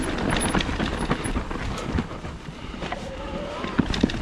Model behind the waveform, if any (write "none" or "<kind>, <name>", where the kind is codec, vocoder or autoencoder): none